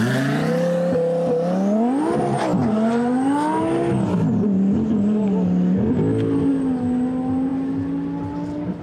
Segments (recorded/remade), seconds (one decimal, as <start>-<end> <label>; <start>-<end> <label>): 0.0-8.8 recorded